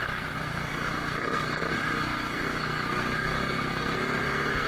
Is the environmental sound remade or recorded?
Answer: remade